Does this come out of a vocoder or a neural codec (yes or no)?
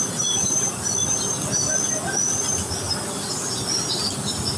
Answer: no